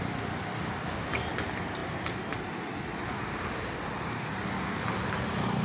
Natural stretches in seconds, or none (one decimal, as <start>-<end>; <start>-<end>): 0.0-5.6